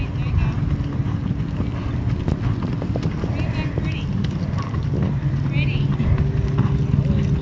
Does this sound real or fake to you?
real